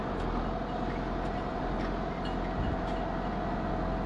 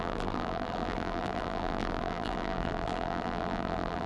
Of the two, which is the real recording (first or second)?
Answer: first